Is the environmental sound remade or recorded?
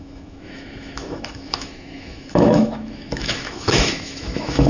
remade